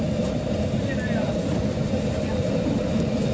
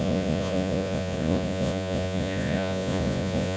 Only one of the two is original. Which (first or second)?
first